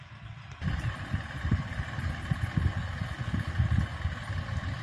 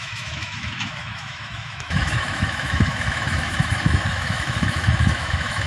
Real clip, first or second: first